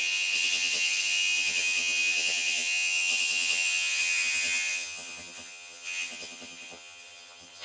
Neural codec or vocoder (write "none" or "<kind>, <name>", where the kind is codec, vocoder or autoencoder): vocoder, HiFi-GAN